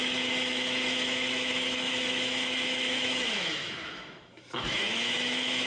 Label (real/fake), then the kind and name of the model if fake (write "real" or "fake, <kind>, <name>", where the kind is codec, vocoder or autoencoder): fake, autoencoder, DAC-VAE